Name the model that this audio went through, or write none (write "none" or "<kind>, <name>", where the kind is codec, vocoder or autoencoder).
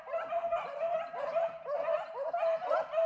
none